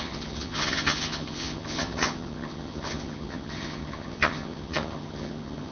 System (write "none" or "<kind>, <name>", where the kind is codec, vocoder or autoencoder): vocoder, HiFi-GAN